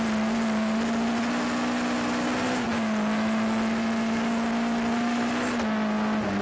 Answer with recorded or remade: recorded